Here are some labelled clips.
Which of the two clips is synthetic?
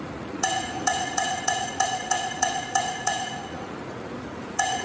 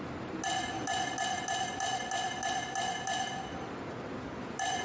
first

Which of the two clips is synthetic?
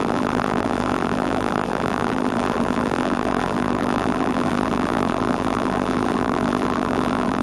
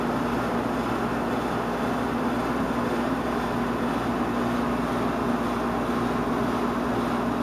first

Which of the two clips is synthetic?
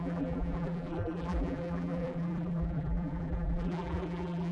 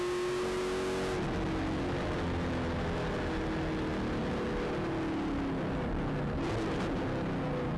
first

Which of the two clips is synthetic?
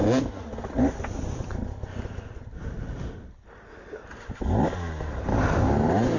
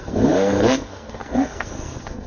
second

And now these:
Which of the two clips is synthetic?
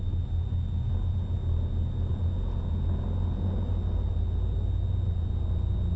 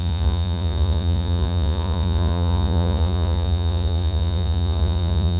second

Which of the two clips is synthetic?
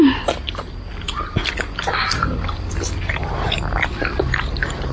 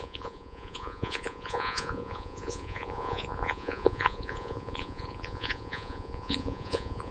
second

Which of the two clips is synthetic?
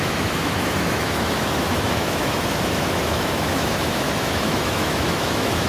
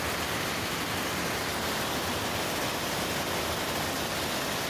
first